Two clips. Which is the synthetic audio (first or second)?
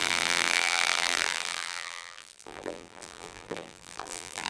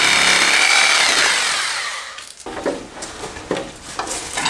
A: first